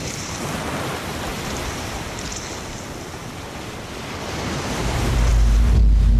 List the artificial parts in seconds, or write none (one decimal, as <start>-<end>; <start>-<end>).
0.0-1.3; 2.6-5.3